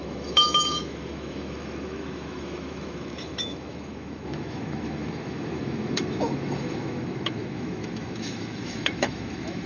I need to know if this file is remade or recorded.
remade